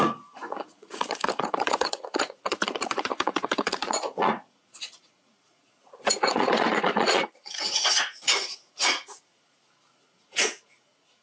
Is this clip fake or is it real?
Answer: fake